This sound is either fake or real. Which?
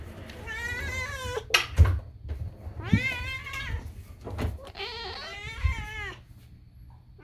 real